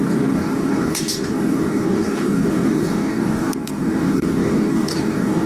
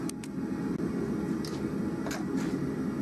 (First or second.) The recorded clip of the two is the second